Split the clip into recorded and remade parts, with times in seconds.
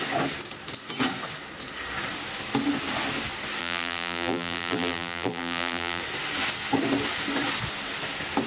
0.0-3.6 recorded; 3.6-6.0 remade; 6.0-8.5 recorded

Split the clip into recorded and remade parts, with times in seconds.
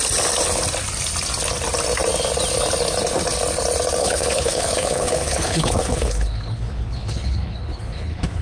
0.0-4.0 recorded; 4.0-8.4 remade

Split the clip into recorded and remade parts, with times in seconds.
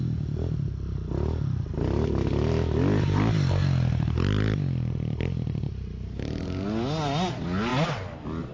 0.0-8.5 recorded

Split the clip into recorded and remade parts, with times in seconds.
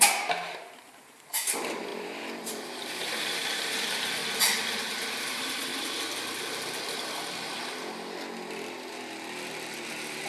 0.0-4.2 remade; 4.2-5.2 recorded; 5.2-5.7 remade; 5.7-9.9 recorded; 9.9-10.3 remade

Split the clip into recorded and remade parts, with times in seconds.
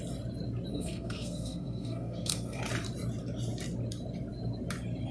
0.0-0.7 recorded; 0.7-2.6 remade; 2.6-5.1 recorded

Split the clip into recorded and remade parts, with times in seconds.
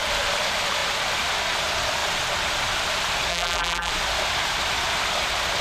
0.0-3.3 recorded; 3.3-3.9 remade; 3.9-5.6 recorded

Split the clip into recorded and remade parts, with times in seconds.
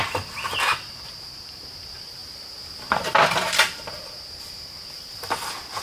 0.0-5.8 recorded